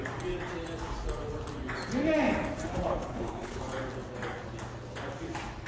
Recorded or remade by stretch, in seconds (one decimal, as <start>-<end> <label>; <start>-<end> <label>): 0.0-2.7 recorded; 2.7-3.6 remade; 3.6-5.7 recorded